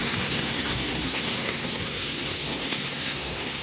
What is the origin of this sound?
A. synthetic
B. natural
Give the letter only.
A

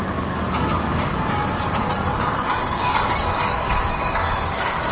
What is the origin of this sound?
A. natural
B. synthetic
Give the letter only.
B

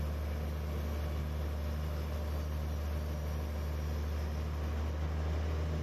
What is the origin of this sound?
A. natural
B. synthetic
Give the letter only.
A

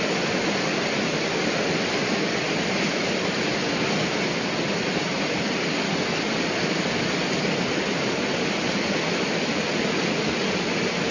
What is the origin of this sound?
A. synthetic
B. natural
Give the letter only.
B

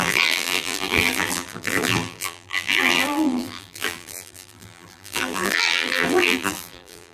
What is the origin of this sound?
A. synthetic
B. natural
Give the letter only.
A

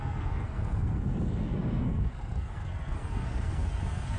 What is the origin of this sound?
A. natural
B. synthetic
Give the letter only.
B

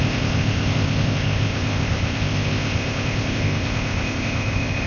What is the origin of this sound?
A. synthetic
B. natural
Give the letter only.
A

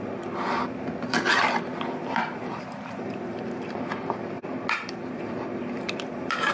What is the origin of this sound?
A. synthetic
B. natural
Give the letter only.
B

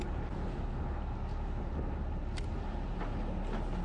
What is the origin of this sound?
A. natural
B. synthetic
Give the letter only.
A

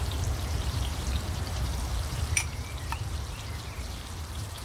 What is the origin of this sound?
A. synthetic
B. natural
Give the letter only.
A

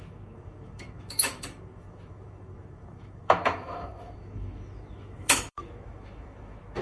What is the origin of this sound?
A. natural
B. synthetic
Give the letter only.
B